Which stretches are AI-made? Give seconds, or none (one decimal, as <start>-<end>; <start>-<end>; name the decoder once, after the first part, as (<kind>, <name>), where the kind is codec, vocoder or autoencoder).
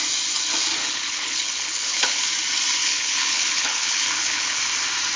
0.8-2.2 (codec, HILCodec); 2.8-4.6